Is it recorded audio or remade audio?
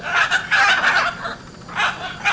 recorded